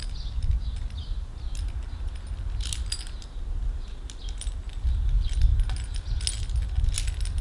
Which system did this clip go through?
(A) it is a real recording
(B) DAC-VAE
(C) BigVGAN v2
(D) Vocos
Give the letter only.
A